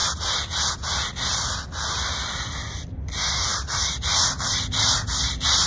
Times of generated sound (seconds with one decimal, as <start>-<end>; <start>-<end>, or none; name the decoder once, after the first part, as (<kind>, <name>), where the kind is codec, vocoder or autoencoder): 0.0-0.7 (vocoder, BigVGAN v2); 3.5-5.7